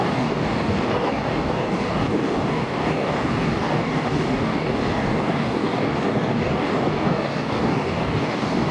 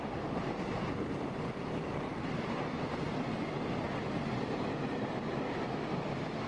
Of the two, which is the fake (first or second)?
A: first